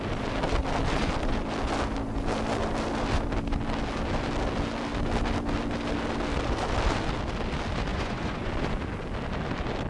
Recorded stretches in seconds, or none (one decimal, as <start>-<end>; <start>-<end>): 0.0-7.9; 8.5-9.9